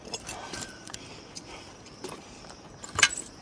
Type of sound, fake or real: fake